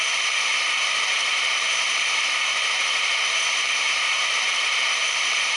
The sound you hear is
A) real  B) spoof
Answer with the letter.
B